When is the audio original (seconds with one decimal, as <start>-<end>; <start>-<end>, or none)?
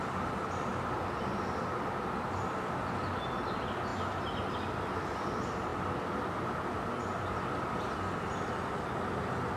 0.0-9.6